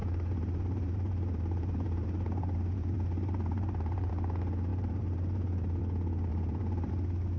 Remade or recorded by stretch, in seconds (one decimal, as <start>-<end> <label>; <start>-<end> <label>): 0.0-4.1 remade; 4.1-4.7 recorded; 4.7-5.8 remade; 5.8-6.3 recorded; 6.3-6.9 remade; 6.9-7.4 recorded